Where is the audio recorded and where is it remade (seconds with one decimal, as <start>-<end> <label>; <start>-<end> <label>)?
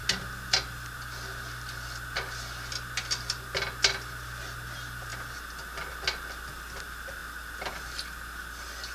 0.0-8.9 recorded